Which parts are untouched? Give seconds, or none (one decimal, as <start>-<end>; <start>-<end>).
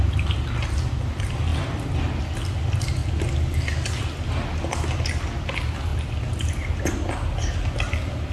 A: 0.0-8.3